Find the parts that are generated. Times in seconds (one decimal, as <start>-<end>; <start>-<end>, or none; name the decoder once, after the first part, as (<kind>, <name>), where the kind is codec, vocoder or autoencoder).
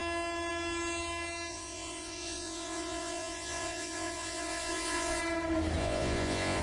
1.5-5.2 (vocoder, Vocos); 5.8-6.6